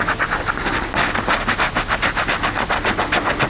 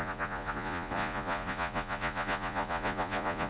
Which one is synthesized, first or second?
second